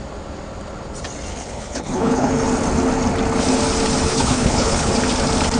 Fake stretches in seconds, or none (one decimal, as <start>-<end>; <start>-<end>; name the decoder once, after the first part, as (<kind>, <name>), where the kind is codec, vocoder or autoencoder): 1.3-2.3 (codec, HILCodec); 4.1-4.9